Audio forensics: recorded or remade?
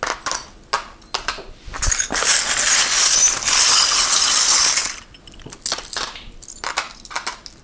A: recorded